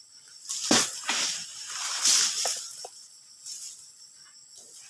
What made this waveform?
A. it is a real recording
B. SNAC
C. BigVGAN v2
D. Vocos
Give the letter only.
A